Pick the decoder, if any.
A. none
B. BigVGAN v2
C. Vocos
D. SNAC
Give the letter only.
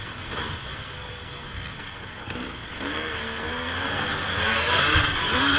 D